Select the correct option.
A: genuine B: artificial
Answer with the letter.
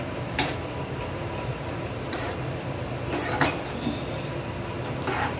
A